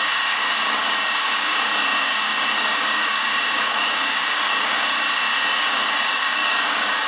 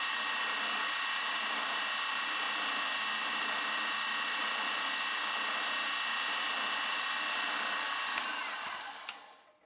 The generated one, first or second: first